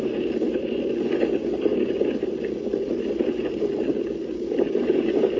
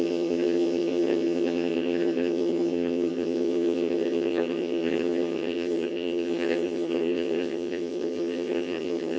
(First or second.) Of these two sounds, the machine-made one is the second